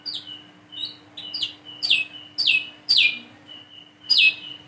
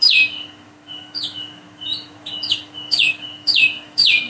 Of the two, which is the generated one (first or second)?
second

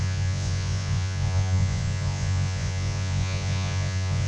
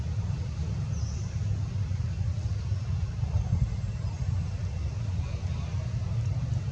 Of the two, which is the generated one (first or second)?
first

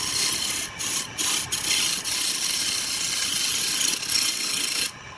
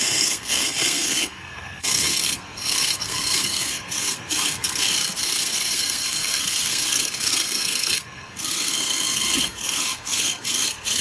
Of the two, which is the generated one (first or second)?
second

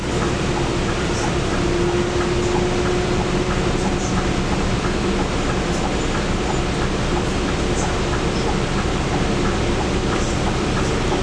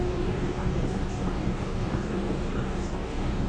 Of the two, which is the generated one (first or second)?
second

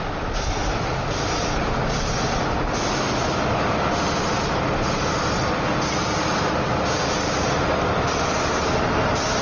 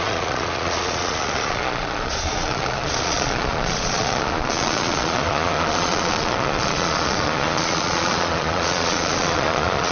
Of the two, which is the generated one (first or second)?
second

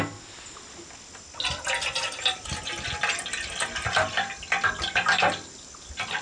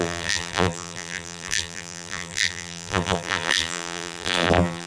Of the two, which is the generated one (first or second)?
second